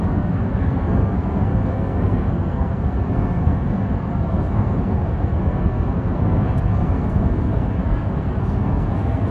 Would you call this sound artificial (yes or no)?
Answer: yes